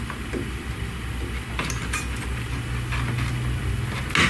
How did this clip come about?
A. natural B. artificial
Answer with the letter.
A